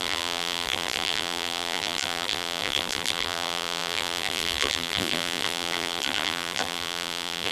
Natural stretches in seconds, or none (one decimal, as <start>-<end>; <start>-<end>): none